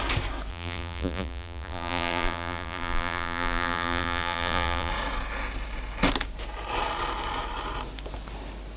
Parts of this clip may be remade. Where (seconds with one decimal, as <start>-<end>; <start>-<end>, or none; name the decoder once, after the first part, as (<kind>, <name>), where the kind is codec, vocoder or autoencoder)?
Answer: 0.5-4.9 (vocoder, BigVGAN v2)